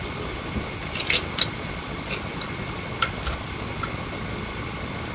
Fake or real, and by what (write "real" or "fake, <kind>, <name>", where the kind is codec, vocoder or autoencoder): real